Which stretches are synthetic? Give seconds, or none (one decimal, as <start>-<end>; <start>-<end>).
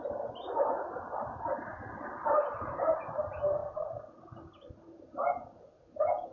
none